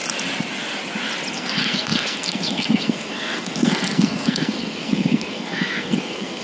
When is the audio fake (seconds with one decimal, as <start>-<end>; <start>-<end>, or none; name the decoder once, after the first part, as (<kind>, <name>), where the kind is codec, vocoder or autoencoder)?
1.3-6.4 (codec, SNAC)